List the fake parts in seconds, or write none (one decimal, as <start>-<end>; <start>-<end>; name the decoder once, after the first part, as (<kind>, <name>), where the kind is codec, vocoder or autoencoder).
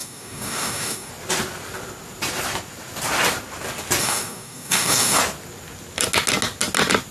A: 0.0-1.1 (codec, DAC); 4.0-5.2